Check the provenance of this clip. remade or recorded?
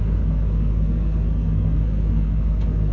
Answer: remade